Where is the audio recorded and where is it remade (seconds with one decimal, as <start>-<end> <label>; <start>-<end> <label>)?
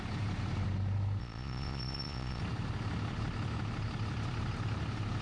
0.0-1.2 recorded; 1.2-2.4 remade; 2.4-5.2 recorded